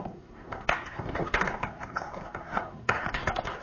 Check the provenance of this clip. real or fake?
fake